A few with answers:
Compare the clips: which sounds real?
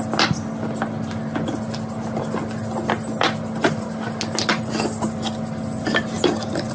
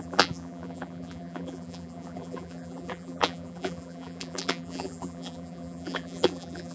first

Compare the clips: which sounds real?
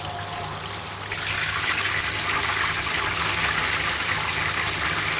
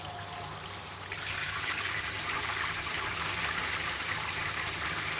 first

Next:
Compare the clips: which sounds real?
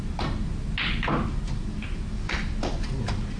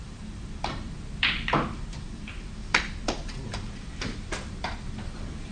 first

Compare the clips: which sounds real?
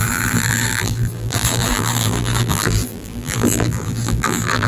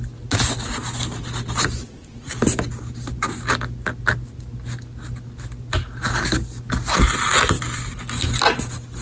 second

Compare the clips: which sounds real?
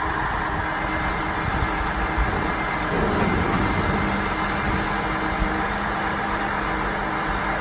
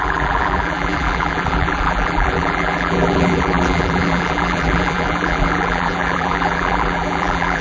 first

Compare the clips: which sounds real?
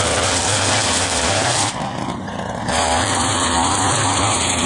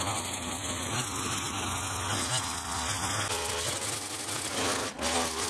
second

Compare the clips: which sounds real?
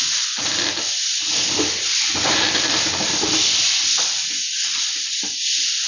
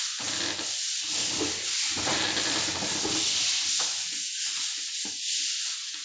second